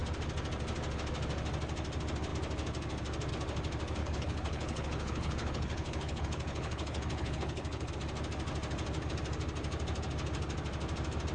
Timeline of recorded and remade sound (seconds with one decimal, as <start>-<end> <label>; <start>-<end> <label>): 0.0-4.0 recorded; 4.0-7.9 remade; 7.9-11.3 recorded